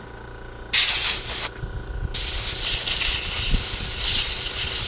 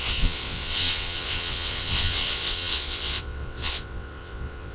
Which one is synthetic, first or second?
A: second